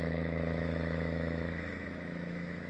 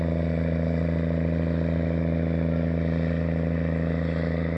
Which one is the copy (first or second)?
first